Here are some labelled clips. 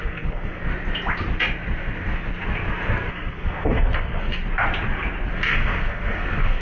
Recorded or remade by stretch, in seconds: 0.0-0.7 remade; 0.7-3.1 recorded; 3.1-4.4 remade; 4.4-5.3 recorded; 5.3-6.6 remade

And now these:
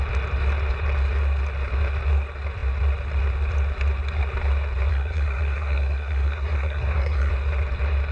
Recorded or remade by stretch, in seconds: 0.0-4.9 recorded; 4.9-7.3 remade; 7.3-8.1 recorded